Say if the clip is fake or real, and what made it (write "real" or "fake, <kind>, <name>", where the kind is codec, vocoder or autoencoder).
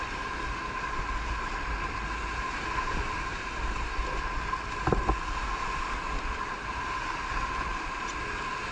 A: real